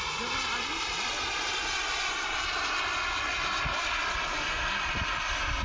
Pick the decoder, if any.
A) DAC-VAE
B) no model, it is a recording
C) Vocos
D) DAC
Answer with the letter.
B